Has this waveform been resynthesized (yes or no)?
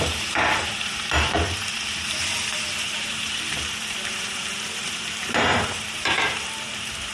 yes